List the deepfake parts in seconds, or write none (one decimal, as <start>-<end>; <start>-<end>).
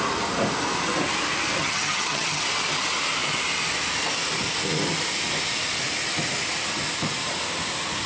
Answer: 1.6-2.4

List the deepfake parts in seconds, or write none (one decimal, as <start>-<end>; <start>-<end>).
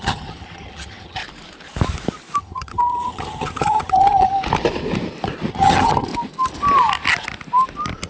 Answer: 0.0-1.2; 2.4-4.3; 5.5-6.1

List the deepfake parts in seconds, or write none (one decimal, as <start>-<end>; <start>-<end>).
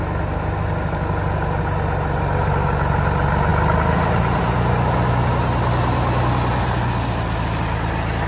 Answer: none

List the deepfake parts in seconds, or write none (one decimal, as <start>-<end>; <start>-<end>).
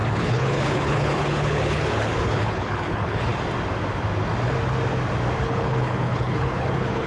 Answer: 0.0-3.3; 5.4-7.1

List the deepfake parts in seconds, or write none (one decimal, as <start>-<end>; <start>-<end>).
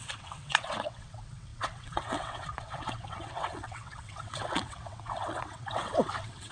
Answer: 0.0-6.5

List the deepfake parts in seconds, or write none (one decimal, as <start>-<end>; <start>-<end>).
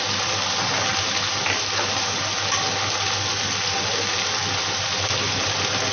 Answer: none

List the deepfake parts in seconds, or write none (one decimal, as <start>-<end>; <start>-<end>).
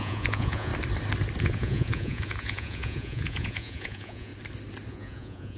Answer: 0.0-0.7; 1.4-4.3; 4.9-5.6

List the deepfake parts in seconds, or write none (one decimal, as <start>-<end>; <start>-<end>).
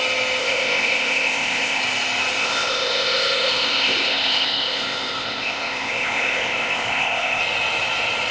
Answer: 0.4-1.8; 2.4-7.4